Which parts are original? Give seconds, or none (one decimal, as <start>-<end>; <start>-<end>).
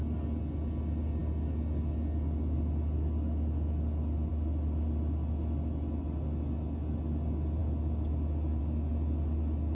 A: 0.0-9.7